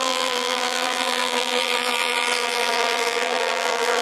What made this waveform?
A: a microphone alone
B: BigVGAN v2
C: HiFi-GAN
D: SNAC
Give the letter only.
B